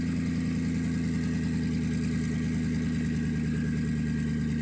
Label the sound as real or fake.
real